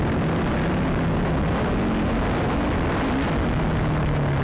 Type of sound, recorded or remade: recorded